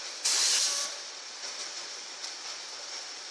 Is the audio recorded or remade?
remade